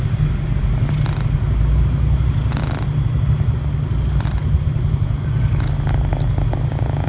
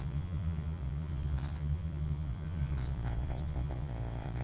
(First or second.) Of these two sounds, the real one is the first